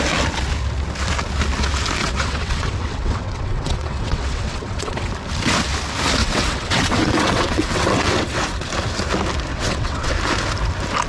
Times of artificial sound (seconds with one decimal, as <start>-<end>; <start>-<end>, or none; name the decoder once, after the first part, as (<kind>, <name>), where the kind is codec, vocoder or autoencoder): 2.0-5.1 (vocoder, WaveNeXt); 6.2-8.4; 9.5-10.1